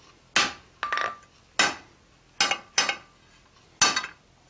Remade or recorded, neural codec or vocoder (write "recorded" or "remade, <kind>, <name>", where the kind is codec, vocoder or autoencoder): recorded